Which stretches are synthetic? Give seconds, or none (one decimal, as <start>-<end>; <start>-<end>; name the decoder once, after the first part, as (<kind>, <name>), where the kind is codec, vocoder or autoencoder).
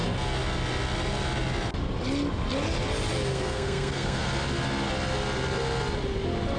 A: 3.3-4.3 (codec, SNAC)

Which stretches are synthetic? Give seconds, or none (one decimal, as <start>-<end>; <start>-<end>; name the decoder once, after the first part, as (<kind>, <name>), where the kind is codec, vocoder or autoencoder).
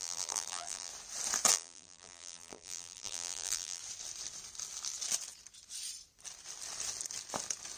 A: 0.0-0.9 (vocoder, BigVGAN v2); 1.5-3.8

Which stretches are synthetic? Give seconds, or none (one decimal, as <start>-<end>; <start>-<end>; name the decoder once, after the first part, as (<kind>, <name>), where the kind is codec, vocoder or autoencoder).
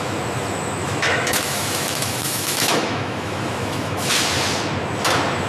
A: 0.8-4.1 (autoencoder, DAC-VAE)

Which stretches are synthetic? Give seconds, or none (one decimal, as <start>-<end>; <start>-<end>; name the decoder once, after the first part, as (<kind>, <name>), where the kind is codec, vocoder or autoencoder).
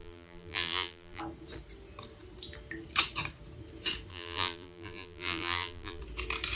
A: 0.0-1.2 (vocoder, BigVGAN v2); 4.1-6.0